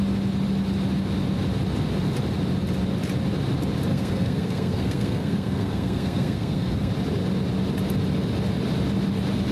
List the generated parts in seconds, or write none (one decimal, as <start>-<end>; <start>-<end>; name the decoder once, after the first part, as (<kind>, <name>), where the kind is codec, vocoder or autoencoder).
3.9-6.9 (codec, SNAC)